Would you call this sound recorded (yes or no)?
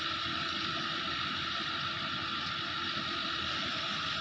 yes